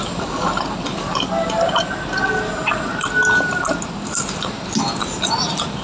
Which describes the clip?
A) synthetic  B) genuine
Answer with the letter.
B